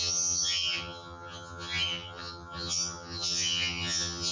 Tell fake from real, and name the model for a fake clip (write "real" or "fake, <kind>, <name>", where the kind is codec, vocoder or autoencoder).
fake, vocoder, HiFi-GAN